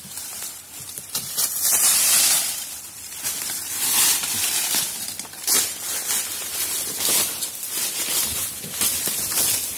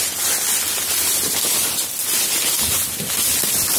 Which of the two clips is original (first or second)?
second